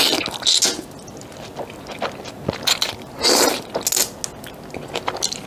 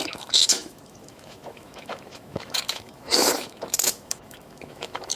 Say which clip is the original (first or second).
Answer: first